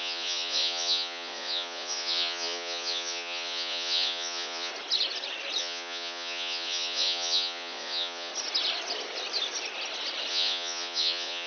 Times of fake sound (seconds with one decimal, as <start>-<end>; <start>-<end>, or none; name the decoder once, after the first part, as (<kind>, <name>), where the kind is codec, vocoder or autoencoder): 0.0-4.7 (vocoder, Vocos); 5.6-8.3; 10.3-11.5